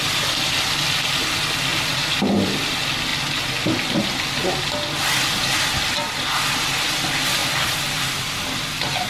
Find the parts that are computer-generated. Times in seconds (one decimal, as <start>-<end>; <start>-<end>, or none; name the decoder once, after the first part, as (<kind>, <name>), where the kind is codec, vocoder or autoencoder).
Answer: 1.7-2.2 (vocoder, BigVGAN v2); 7.4-8.2